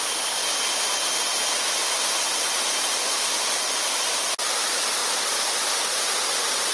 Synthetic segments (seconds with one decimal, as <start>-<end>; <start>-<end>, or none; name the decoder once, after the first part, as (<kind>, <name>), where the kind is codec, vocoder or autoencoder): 0.0-0.4 (vocoder, BigVGAN v2); 4.4-6.7